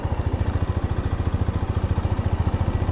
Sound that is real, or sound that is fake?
real